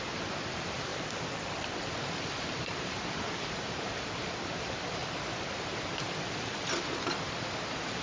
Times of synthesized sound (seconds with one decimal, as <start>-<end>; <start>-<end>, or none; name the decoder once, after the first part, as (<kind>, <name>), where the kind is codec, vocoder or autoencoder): 0.0-0.9 (vocoder, BigVGAN v2); 2.5-5.0; 6.2-8.0